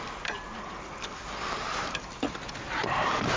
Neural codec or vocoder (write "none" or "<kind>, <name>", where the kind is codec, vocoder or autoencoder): none